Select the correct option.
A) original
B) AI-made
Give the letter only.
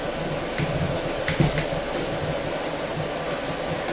A